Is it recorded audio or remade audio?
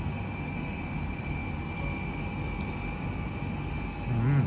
recorded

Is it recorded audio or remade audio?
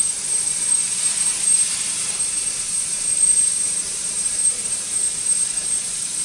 remade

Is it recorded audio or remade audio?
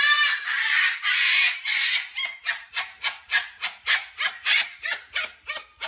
remade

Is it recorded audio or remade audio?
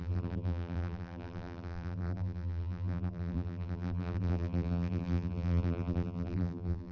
remade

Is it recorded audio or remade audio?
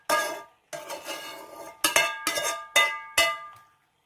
recorded